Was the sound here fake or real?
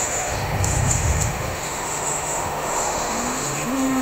fake